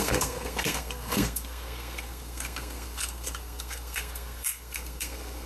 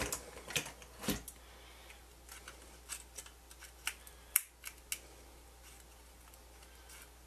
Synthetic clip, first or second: first